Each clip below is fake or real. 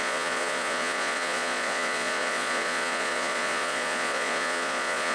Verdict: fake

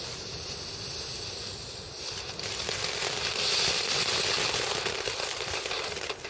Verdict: real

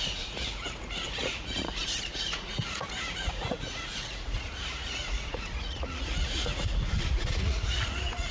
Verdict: fake